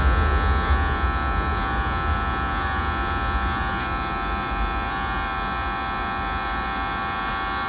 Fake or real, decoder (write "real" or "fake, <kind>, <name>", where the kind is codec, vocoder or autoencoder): fake, vocoder, Vocos